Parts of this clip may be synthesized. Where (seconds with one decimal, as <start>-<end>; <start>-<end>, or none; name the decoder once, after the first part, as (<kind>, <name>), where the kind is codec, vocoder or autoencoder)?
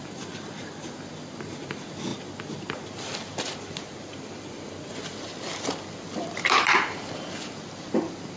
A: none